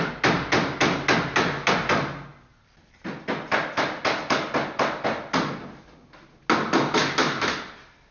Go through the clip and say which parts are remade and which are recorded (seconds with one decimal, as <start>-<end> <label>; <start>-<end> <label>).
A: 0.0-8.1 recorded